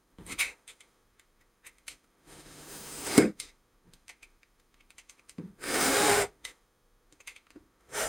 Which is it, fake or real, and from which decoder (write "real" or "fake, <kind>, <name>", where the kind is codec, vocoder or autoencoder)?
fake, autoencoder, DAC-VAE